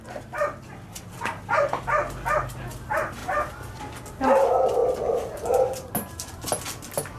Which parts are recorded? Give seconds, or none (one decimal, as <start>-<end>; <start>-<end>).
0.0-7.2